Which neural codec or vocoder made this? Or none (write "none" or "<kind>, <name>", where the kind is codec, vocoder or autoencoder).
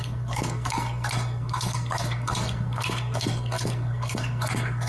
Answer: codec, SNAC